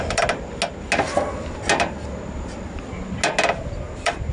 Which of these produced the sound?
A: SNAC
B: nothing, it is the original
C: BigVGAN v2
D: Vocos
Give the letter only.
B